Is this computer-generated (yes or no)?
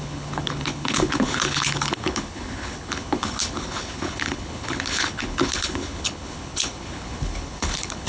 yes